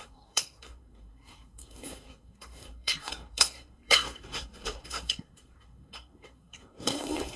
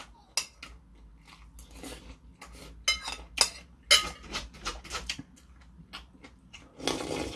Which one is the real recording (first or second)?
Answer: second